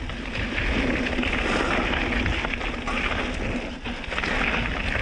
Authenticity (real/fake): real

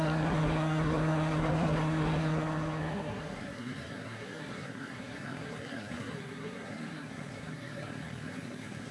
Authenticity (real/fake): fake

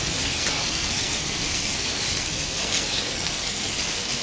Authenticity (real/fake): fake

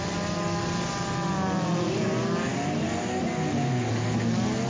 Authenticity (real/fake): real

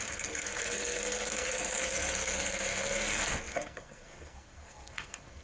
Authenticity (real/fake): fake